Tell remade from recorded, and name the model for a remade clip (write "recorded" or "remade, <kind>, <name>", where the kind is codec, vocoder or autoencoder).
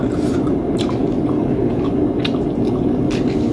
recorded